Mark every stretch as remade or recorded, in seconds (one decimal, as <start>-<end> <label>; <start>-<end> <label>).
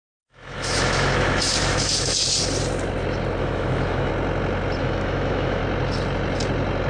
0.0-2.2 remade; 2.2-3.4 recorded; 3.4-4.1 remade; 4.1-4.8 recorded; 4.8-5.6 remade; 5.6-6.9 recorded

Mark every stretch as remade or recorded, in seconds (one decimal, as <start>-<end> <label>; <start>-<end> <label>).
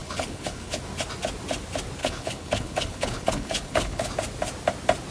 0.0-0.8 remade; 0.8-2.0 recorded; 2.0-4.1 remade; 4.1-5.1 recorded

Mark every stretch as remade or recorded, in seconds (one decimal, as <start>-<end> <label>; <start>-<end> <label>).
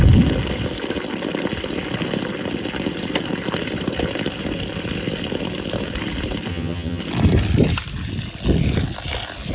0.0-6.5 recorded; 6.5-7.0 remade; 7.0-9.5 recorded